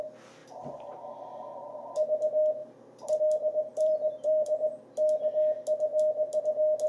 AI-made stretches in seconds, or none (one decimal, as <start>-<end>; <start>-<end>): 0.4-1.8; 2.6-3.2; 3.7-4.8